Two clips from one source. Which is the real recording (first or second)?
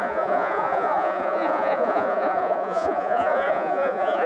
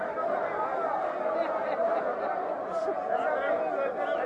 second